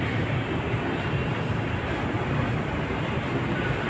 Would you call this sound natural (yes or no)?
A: yes